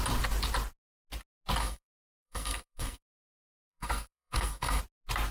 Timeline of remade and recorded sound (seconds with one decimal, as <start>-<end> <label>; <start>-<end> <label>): 0.0-1.6 recorded; 1.6-4.8 remade; 4.8-5.3 recorded